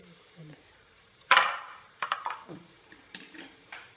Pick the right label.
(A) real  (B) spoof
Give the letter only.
B